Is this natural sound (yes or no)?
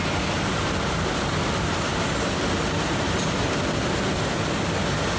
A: yes